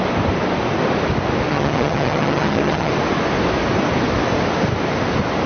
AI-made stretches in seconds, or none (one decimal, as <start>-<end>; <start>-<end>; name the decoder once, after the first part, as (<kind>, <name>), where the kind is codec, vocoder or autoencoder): 1.5-2.9 (vocoder, HiFi-GAN)